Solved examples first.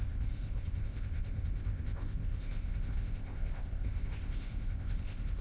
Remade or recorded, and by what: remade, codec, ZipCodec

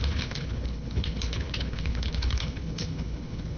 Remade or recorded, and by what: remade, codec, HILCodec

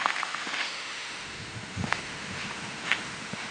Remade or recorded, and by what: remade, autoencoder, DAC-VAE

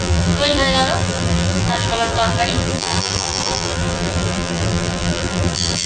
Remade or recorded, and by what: remade, vocoder, BigVGAN v2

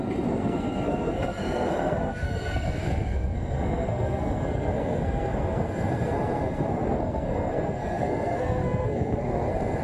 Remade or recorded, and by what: remade, codec, SNAC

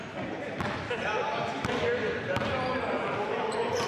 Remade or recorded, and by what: recorded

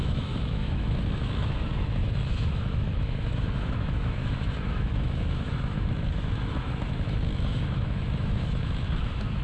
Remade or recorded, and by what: remade, autoencoder, DAC-VAE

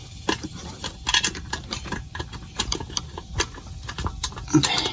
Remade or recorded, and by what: recorded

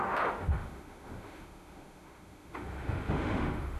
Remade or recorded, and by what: remade, autoencoder, DAC-VAE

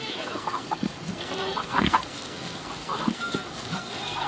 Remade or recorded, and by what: remade, codec, SNAC